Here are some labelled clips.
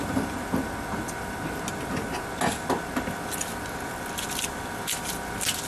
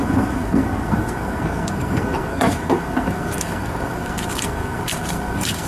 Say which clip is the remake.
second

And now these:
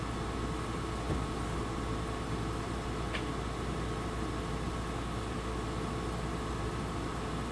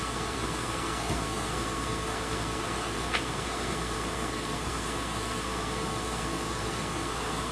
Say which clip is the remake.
second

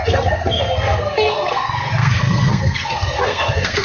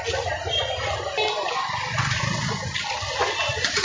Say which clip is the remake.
first